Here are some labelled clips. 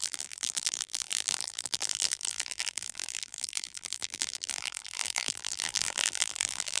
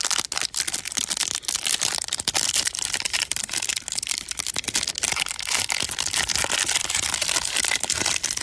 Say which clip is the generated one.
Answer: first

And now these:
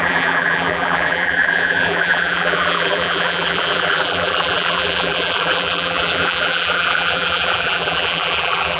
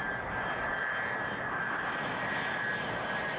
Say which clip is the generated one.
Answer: first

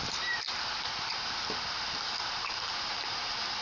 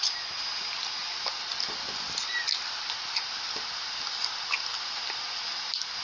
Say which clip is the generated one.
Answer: first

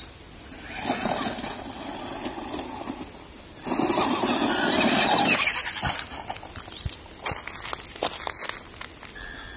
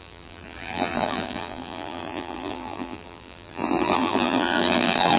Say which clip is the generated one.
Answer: second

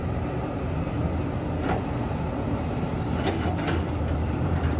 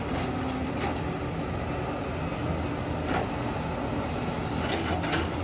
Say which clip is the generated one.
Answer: first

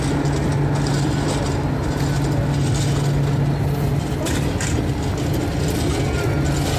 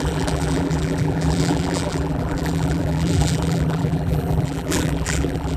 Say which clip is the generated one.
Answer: second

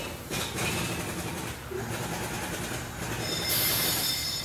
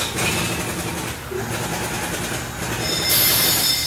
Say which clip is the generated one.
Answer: first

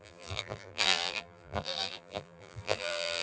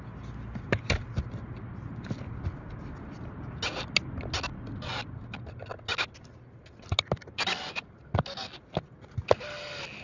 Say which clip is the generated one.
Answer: first